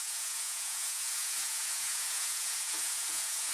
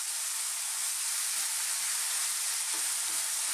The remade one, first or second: first